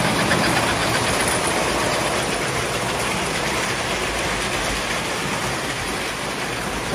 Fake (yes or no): no